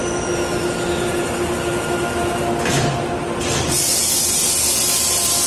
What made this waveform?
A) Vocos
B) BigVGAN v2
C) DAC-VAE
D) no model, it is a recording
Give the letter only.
D